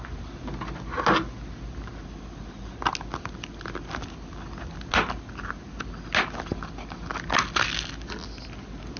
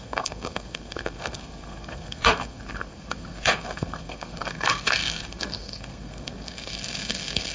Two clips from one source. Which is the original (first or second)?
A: first